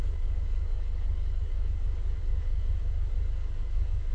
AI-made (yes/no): yes